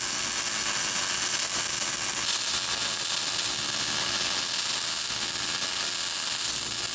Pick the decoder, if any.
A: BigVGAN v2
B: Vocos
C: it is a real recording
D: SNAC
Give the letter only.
C